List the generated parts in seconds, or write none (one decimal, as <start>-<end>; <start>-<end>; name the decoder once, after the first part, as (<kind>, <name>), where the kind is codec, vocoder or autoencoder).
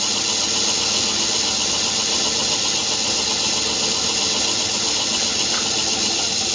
none